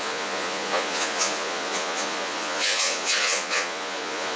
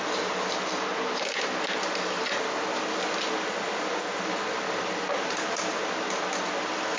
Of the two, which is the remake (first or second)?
first